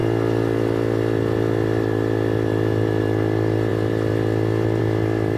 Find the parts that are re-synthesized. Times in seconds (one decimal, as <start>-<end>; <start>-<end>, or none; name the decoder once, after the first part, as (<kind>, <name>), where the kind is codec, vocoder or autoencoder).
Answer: none